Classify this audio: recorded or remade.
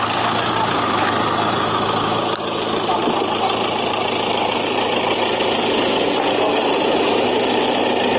remade